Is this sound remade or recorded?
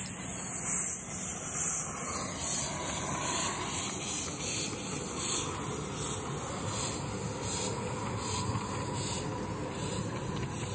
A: recorded